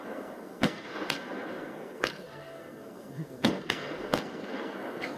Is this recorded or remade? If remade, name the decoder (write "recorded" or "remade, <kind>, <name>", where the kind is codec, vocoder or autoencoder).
remade, codec, SNAC